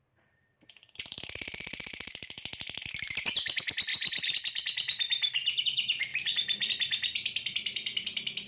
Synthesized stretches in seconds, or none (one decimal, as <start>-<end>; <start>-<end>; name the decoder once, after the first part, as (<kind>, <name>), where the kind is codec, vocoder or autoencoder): 6.1-6.7 (vocoder, BigVGAN v2)